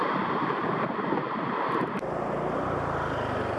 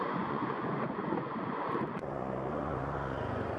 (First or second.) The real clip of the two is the first